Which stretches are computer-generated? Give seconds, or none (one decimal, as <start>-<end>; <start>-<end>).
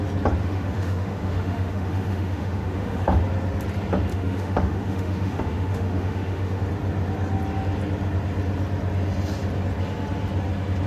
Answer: 0.4-3.2; 4.1-6.6